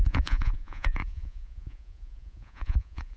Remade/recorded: remade